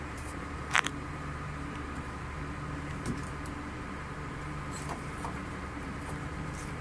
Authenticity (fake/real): fake